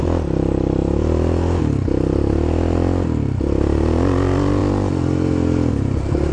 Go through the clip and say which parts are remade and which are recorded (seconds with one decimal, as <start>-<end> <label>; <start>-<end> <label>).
0.0-0.8 recorded; 0.8-1.6 remade; 1.6-6.3 recorded